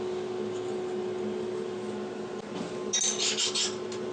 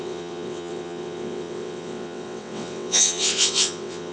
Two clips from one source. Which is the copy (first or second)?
second